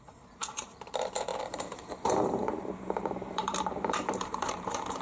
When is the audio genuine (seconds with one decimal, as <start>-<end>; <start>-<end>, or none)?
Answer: none